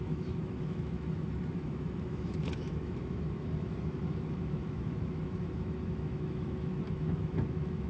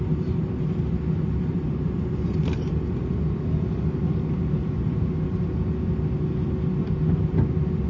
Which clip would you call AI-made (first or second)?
first